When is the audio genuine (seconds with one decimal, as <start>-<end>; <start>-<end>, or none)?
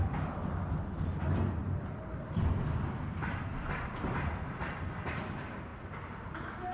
0.0-4.6; 5.1-6.7